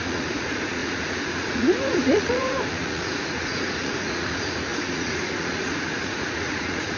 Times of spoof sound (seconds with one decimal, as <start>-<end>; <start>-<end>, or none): 0.0-7.0